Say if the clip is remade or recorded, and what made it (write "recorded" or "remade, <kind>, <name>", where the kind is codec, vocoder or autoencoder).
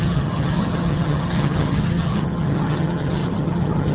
remade, vocoder, HiFi-GAN